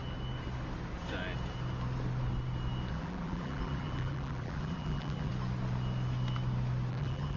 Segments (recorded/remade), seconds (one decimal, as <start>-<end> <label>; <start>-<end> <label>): 0.0-2.9 recorded; 2.9-5.3 remade; 5.3-6.9 recorded; 6.9-7.4 remade